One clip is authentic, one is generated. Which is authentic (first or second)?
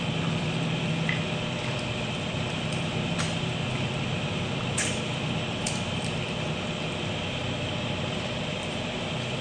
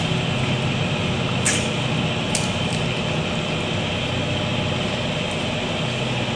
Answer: second